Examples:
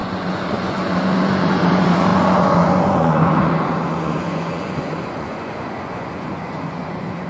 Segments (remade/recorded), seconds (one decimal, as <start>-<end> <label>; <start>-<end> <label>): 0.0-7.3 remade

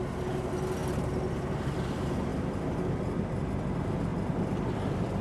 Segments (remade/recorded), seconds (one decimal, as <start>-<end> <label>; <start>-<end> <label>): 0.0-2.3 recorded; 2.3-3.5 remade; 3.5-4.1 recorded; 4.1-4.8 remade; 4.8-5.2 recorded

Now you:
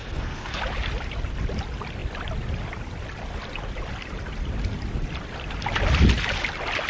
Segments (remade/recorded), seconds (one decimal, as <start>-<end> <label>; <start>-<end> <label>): 0.0-0.6 remade; 0.6-6.9 recorded